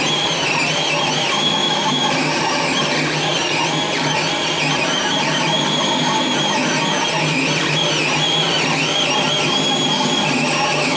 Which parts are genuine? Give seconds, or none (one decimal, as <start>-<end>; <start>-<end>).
0.0-1.6; 2.6-11.0